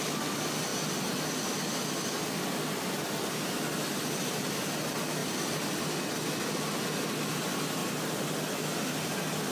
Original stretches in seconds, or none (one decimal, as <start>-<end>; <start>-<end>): 0.0-5.2; 5.8-7.8; 8.6-9.5